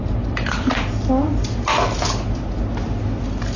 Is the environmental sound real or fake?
real